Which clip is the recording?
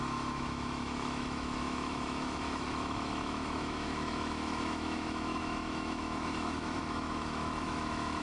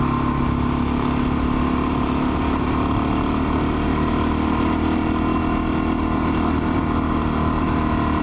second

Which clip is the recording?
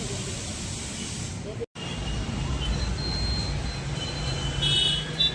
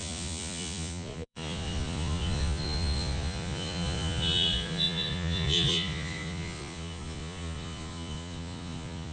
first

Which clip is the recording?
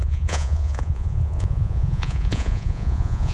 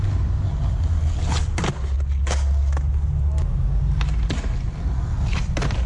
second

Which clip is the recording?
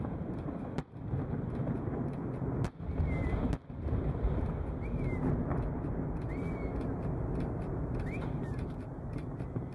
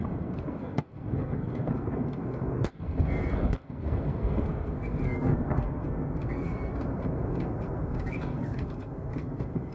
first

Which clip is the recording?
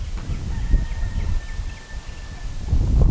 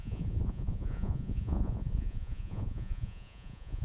first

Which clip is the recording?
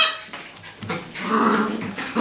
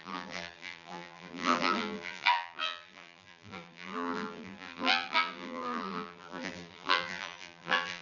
first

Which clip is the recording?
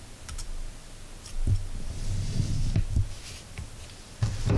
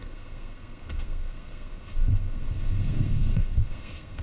first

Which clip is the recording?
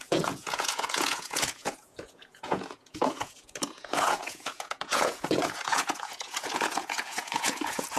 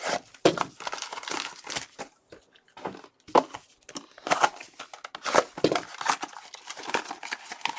second